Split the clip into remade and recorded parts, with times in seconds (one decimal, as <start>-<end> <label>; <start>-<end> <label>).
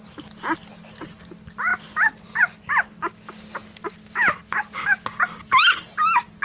0.0-6.4 recorded